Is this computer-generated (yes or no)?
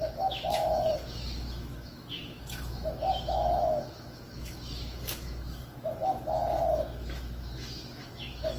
yes